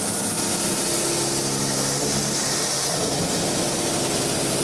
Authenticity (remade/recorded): recorded